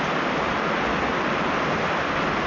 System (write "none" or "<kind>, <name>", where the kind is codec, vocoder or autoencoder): none